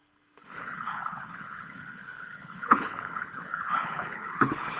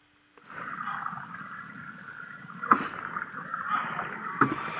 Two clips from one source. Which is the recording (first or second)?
second